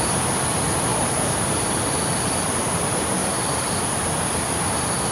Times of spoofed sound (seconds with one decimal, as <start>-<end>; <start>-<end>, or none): 0.9-2.0; 3.2-3.8